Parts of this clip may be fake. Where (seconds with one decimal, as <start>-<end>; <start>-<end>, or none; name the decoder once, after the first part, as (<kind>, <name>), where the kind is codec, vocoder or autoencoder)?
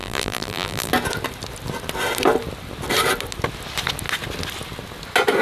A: 0.0-0.9 (vocoder, BigVGAN v2)